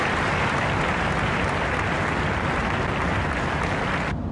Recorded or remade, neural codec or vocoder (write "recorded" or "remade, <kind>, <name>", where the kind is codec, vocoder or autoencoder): recorded